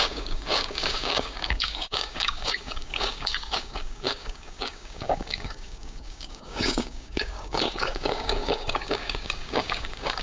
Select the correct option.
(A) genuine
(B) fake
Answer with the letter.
B